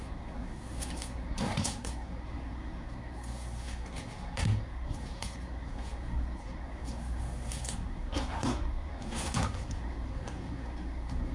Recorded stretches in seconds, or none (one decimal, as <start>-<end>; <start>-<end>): none